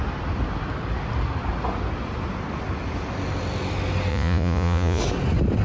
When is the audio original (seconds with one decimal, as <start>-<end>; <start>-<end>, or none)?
0.0-4.1; 5.0-5.6